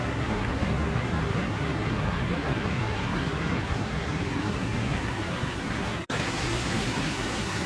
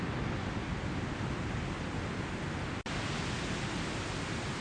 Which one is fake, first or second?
first